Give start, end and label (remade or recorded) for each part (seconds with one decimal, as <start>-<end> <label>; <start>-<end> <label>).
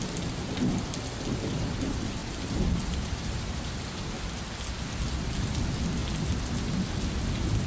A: 0.0-2.2 recorded; 2.2-3.8 remade; 3.8-7.7 recorded